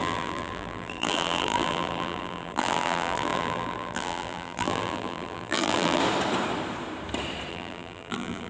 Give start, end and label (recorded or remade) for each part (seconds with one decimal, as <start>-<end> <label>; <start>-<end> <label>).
0.0-6.0 remade; 6.0-7.5 recorded; 7.5-8.5 remade